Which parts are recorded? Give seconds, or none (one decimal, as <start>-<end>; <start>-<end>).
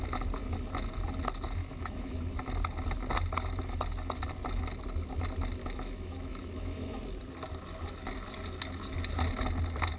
0.0-1.6; 2.3-5.6; 7.0-10.0